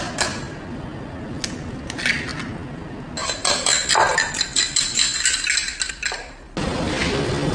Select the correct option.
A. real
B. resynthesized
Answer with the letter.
A